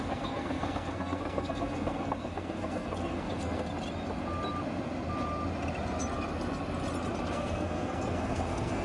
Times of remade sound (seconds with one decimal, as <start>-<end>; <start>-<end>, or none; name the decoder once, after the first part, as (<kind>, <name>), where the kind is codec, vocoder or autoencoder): 0.0-3.7 (codec, SNAC); 7.3-8.8